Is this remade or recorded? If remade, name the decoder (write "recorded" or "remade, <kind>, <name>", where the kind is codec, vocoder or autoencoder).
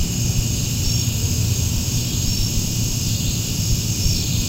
remade, vocoder, BigVGAN v2